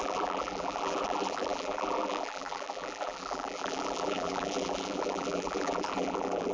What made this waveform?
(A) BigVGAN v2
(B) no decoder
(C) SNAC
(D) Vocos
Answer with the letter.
A